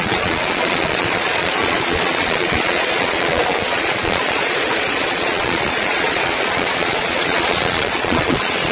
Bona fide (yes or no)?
no